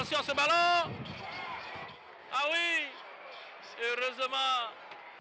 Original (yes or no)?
yes